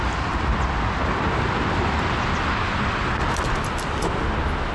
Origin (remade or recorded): recorded